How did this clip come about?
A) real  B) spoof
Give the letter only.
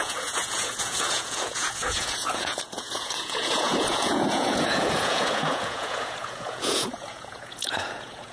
B